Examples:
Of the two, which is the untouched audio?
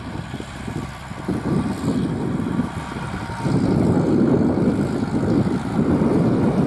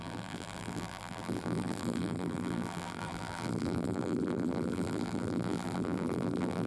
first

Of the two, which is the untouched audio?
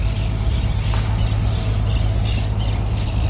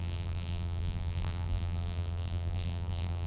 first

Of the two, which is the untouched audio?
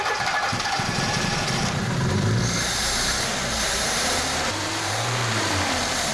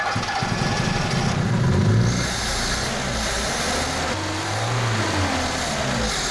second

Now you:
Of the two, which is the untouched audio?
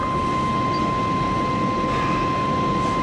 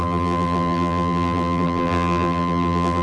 first